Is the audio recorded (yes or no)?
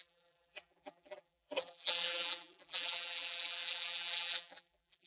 no